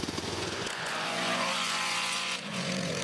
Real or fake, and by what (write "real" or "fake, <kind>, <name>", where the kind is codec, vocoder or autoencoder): fake, vocoder, Vocos